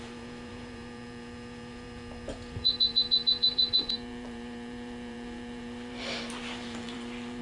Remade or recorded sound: remade